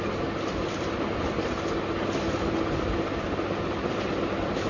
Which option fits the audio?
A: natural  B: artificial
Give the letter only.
A